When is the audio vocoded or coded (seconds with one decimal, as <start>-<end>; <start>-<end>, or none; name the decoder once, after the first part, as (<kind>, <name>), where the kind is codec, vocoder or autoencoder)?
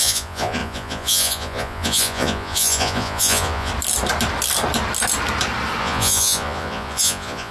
0.0-3.7 (vocoder, Vocos); 5.8-7.5